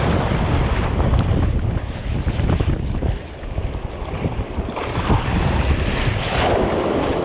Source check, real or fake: real